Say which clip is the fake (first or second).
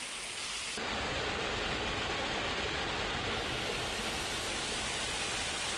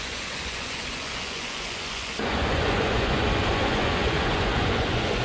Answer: second